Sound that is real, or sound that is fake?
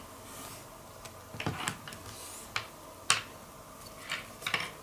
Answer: real